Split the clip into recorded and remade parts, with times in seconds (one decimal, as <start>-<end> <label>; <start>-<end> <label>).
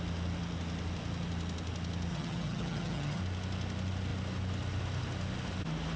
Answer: 0.0-2.1 recorded; 2.1-3.2 remade; 3.2-6.0 recorded